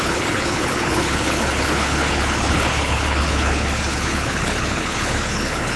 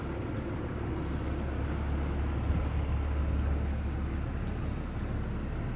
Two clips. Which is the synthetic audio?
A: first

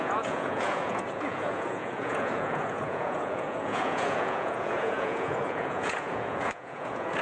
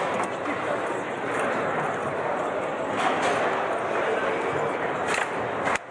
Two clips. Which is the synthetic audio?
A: first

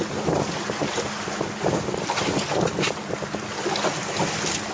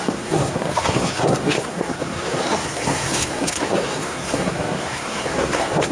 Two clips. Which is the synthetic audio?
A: second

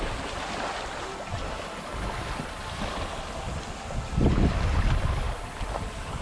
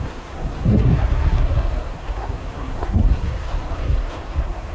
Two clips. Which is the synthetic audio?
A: second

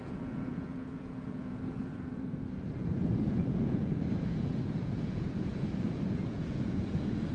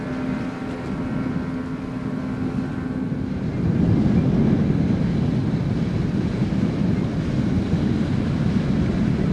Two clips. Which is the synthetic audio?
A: first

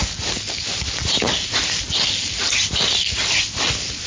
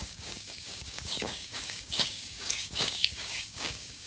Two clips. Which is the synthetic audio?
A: second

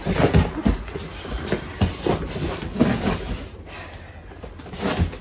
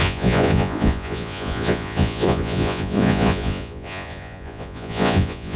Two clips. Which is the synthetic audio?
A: second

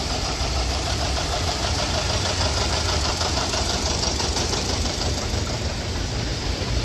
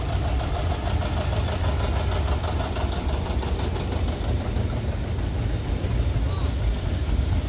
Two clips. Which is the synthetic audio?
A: first